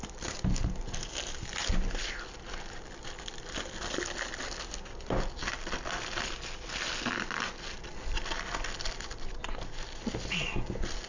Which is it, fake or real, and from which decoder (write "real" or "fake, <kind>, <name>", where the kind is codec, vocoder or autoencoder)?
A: real